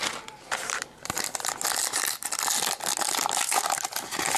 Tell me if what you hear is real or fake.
real